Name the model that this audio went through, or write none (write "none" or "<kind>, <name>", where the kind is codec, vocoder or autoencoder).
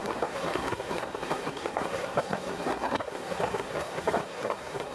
codec, SNAC